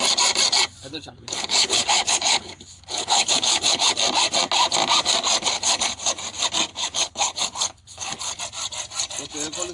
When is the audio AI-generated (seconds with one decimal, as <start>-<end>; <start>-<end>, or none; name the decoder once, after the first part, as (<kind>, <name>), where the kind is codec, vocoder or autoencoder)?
0.9-3.9 (codec, HILCodec); 5.4-6.2; 6.7-8.4